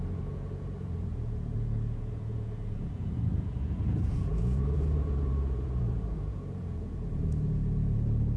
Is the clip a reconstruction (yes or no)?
yes